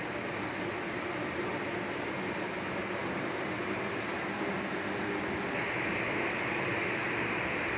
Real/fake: real